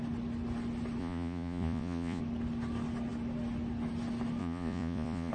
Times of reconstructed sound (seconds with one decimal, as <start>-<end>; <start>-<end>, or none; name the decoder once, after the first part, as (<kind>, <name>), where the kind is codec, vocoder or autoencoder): 1.0-2.2 (vocoder, Vocos); 4.4-5.3